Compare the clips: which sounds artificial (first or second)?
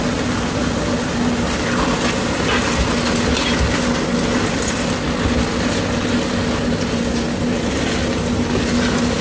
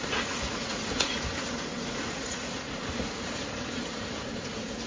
second